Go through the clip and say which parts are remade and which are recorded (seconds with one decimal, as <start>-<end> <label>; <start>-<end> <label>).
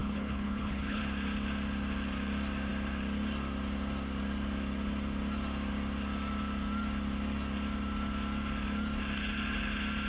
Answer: 0.0-1.0 remade; 1.0-10.1 recorded